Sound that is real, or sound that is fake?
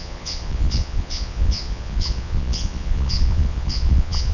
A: fake